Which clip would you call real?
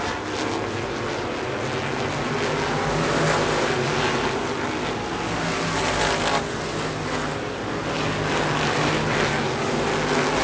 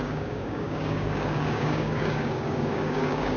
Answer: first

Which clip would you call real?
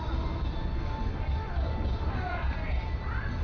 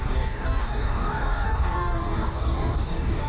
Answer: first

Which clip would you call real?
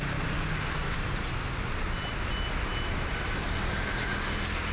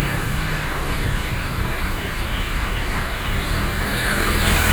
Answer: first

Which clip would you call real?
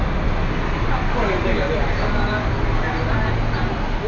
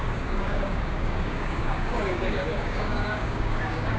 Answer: first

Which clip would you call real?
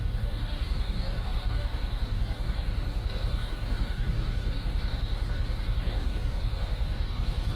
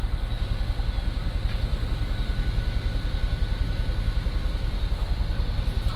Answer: second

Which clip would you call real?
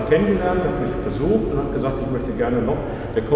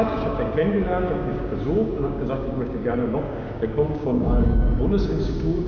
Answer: first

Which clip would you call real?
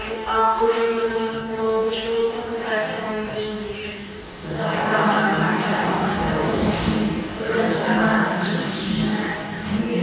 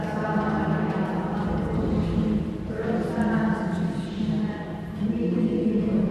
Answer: second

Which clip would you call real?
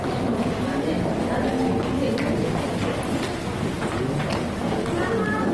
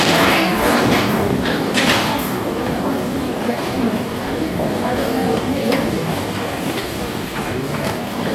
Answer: first